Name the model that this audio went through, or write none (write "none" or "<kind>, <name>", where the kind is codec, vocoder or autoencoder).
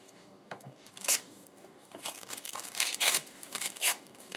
codec, DAC